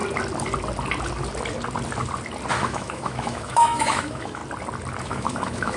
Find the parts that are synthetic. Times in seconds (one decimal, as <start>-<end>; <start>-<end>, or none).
2.5-4.4; 5.0-5.8